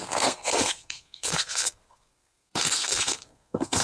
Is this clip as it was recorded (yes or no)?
no